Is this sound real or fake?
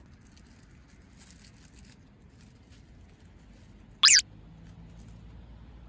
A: real